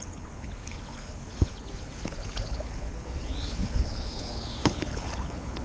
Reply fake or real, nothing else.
fake